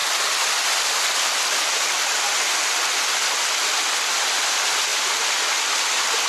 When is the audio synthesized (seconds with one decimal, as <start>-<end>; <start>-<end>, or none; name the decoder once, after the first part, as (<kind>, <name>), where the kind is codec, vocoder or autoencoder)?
none